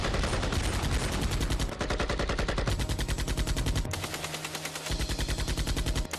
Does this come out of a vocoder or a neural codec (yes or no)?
no